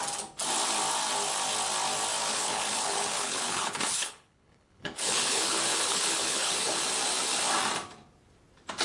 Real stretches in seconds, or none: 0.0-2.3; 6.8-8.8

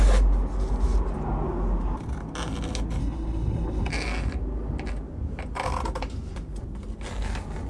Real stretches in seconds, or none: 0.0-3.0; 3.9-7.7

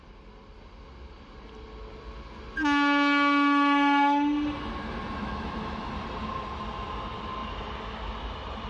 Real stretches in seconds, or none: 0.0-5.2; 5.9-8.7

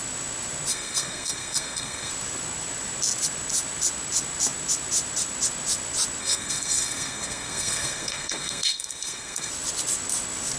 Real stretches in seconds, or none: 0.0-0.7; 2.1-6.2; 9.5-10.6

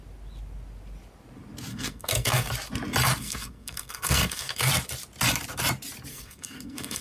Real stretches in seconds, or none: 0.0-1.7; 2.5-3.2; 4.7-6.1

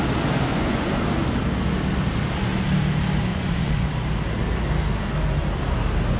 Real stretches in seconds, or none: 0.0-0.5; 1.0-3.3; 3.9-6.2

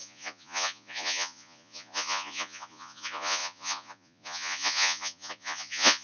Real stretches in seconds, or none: none